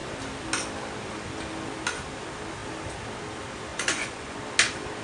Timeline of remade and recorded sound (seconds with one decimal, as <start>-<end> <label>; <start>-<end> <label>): 0.0-3.7 recorded; 3.7-4.4 remade; 4.4-5.0 recorded